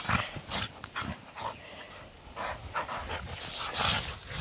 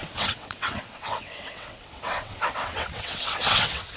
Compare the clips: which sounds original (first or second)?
first